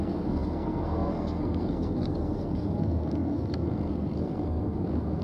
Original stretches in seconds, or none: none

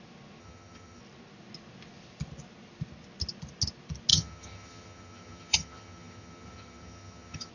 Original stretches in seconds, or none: 0.0-0.4; 1.0-4.1